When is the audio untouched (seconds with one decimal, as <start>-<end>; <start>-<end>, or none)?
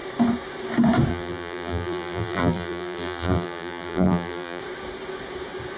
0.0-1.1; 4.6-5.8